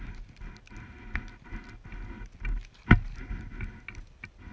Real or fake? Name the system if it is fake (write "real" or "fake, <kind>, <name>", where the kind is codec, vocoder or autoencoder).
real